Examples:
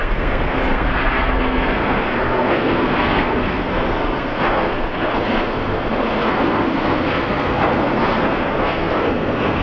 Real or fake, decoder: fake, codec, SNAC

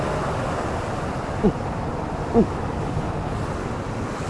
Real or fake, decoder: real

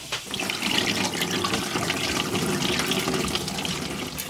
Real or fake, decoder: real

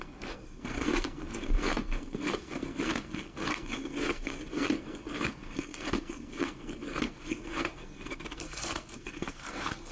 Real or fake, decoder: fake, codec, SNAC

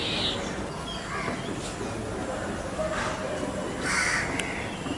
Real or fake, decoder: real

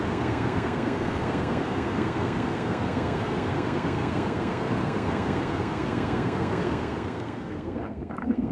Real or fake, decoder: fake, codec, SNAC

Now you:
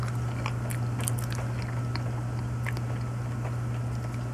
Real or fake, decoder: real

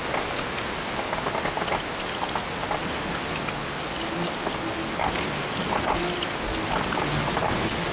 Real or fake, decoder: real